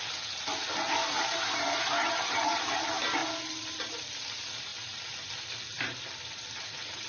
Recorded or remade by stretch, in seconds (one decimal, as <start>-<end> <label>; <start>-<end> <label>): 0.0-2.0 recorded; 2.0-2.6 remade; 2.6-7.1 recorded